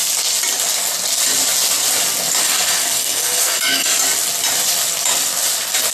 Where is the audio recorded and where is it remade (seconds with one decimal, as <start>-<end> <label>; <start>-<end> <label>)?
0.0-2.4 recorded; 2.4-3.9 remade; 3.9-5.9 recorded